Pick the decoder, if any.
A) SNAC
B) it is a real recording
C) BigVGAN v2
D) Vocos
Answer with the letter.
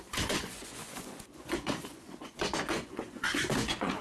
D